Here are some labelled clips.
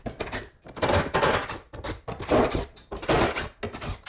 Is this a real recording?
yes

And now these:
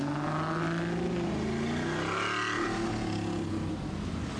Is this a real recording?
yes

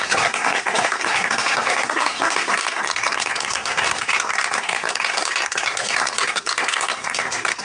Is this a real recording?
no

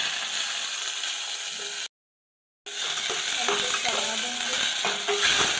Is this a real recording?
yes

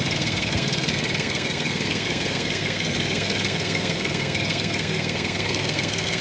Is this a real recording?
no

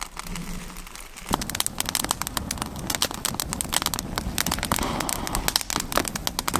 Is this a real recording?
yes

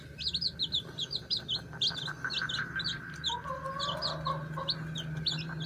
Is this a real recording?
yes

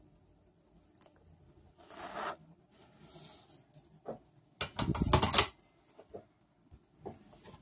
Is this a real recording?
yes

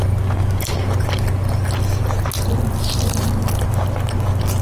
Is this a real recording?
yes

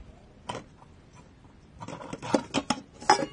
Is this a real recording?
yes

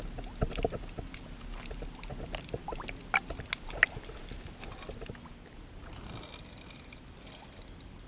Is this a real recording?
yes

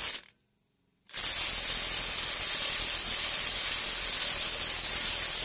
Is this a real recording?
yes